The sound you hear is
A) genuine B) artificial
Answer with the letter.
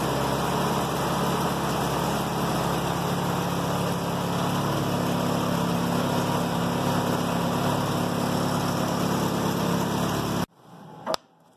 A